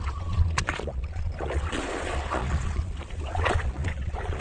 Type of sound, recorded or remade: remade